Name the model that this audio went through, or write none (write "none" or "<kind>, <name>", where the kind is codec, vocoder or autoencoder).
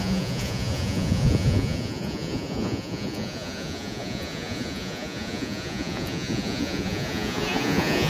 vocoder, Vocos